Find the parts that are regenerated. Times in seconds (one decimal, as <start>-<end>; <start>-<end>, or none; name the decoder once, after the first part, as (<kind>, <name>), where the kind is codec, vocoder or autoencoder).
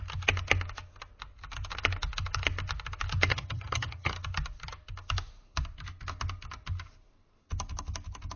3.3-4.1 (vocoder, HiFi-GAN)